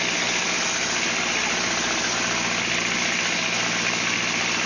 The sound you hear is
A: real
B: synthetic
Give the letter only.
A